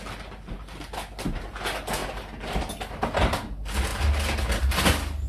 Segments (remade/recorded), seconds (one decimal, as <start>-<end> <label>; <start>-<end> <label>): 0.0-5.3 recorded